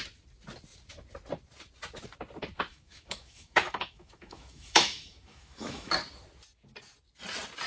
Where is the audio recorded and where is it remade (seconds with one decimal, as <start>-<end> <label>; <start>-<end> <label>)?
0.0-2.7 recorded; 2.7-5.9 remade; 5.9-7.7 recorded